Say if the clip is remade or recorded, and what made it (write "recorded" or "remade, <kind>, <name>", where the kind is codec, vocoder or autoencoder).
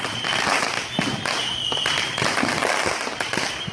recorded